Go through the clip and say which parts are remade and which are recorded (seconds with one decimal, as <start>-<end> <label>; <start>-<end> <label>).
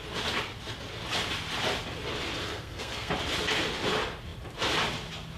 0.0-2.4 recorded; 2.4-3.1 remade; 3.1-5.4 recorded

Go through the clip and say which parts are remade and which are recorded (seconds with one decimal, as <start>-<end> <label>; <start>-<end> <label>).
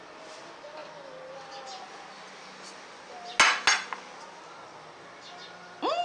0.0-6.0 recorded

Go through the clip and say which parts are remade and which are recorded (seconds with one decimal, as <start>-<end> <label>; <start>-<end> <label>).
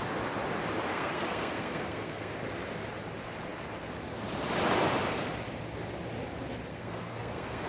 0.0-0.9 recorded; 0.9-2.3 remade; 2.3-6.7 recorded; 6.7-7.7 remade